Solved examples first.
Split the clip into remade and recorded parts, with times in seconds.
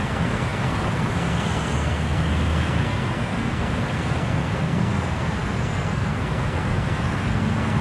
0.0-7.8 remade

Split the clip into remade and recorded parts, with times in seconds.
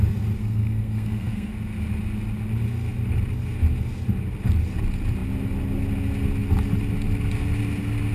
0.0-0.4 recorded; 0.4-1.5 remade; 1.5-8.1 recorded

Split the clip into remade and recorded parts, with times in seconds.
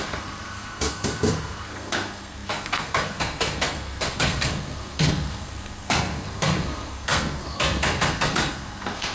0.0-9.1 remade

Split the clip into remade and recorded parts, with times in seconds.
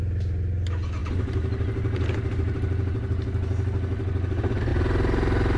0.0-5.6 recorded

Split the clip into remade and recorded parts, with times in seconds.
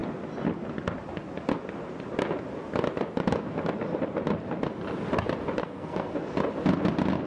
0.0-5.6 recorded; 5.6-6.2 remade; 6.2-7.3 recorded